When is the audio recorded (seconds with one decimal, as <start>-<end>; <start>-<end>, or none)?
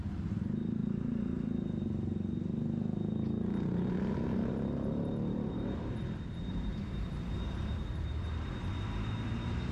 0.8-4.5